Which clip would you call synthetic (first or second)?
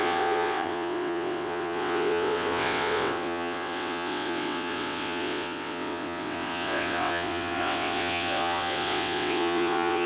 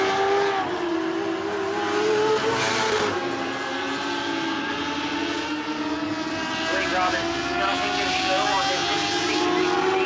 first